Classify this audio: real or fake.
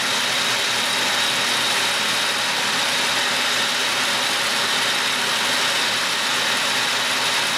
real